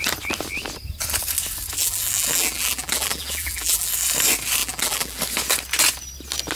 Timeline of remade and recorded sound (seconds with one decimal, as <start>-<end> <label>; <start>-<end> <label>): 0.0-1.8 recorded; 1.8-3.9 remade; 3.9-4.6 recorded; 4.6-5.2 remade; 5.2-6.6 recorded